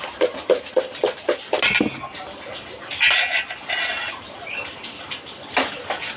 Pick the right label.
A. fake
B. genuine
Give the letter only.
B